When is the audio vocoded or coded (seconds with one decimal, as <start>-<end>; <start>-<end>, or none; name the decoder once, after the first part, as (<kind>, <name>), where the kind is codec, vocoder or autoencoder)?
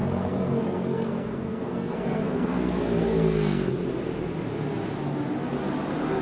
0.0-3.7 (codec, SNAC)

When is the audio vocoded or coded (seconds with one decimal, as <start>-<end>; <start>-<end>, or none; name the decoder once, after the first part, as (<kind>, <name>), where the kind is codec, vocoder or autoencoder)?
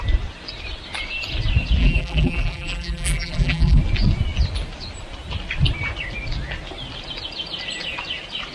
1.8-3.8 (vocoder, BigVGAN v2)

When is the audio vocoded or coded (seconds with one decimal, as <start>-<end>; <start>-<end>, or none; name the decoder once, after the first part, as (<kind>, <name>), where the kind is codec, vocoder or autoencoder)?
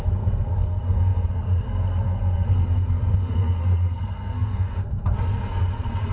0.0-6.1 (codec, SNAC)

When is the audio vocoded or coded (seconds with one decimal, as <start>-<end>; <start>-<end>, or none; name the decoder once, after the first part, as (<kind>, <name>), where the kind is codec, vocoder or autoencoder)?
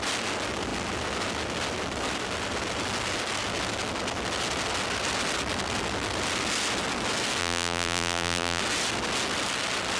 7.4-8.6 (vocoder, BigVGAN v2)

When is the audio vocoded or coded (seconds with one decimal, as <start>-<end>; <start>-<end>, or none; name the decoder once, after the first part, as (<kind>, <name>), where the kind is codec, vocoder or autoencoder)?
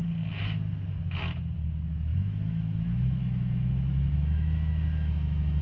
2.1-5.6 (autoencoder, DAC-VAE)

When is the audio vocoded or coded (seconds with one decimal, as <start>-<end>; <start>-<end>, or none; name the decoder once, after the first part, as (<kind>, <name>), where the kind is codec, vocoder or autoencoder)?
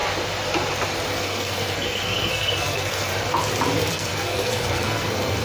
1.1-3.1 (codec, SNAC); 3.9-5.4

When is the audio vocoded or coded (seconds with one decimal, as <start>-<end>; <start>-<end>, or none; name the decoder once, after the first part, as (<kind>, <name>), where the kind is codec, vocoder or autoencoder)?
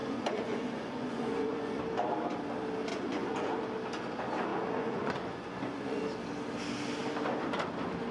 0.0-1.8 (vocoder, Vocos); 2.9-3.5; 4.5-6.0